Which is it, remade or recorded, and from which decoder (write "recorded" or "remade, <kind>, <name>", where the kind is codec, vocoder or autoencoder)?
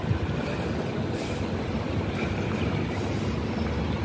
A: recorded